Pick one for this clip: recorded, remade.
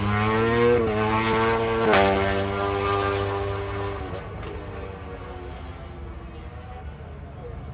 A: recorded